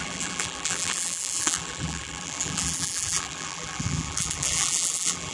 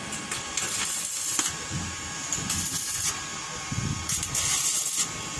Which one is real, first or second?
second